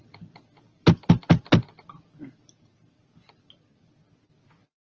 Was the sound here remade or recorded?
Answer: recorded